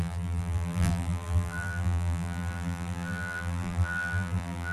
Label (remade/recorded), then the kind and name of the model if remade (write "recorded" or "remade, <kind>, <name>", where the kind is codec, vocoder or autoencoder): remade, vocoder, BigVGAN v2